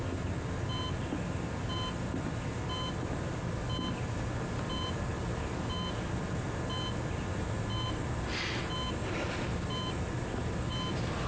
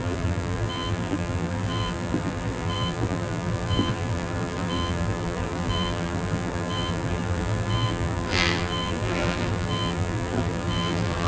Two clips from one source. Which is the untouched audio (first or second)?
first